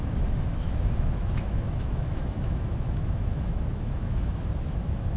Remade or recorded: remade